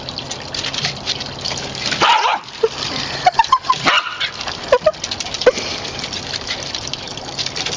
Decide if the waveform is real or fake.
real